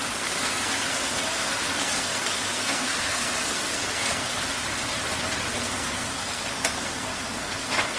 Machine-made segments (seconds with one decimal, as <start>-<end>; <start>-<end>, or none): 0.0-4.3; 5.5-8.0